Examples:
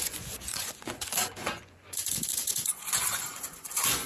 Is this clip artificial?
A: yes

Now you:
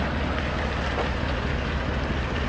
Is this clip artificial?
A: no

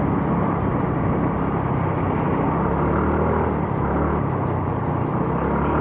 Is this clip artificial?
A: no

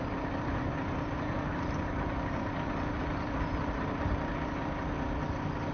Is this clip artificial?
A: no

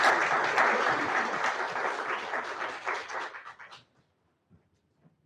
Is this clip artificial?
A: no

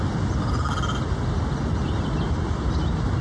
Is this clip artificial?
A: no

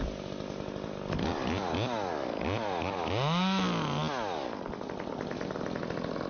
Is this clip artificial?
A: no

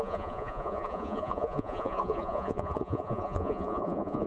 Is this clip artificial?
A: yes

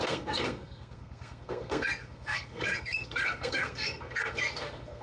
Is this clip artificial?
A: yes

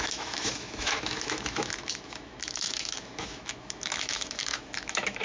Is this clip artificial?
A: yes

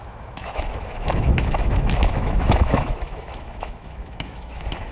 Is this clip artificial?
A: yes